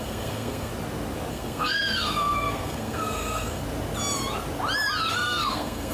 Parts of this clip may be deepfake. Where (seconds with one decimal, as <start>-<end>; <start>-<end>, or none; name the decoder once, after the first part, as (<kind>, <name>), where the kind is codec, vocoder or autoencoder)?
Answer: 0.0-0.7 (codec, SNAC); 1.3-3.6; 5.1-5.9